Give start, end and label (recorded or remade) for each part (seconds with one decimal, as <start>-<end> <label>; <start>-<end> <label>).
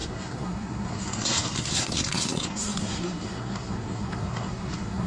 0.0-5.1 remade